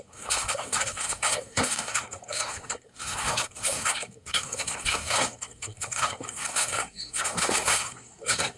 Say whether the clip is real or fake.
fake